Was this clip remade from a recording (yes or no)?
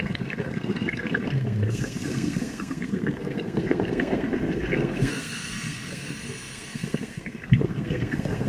yes